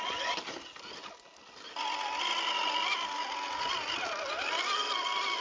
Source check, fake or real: real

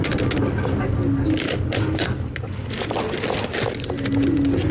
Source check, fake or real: real